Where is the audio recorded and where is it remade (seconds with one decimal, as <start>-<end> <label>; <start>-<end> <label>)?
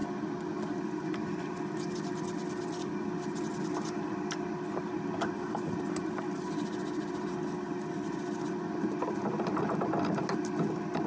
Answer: 0.0-11.1 recorded